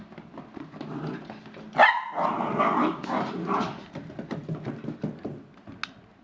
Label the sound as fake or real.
real